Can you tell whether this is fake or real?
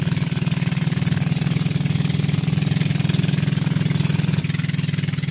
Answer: real